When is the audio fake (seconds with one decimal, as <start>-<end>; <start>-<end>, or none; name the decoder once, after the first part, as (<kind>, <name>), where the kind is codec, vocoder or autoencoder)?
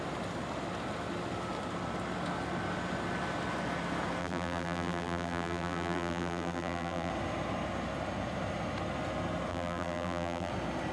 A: 4.2-7.1 (vocoder, BigVGAN v2); 9.5-10.5